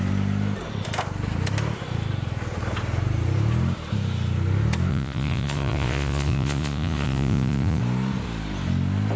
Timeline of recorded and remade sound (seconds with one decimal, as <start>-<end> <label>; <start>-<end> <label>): 0.0-4.9 recorded; 4.9-7.8 remade; 7.8-9.2 recorded